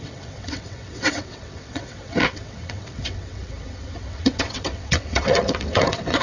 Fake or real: fake